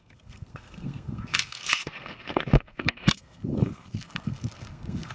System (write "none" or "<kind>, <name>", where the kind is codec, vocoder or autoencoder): codec, SNAC